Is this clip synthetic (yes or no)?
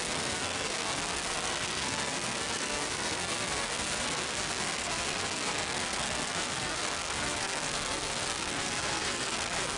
yes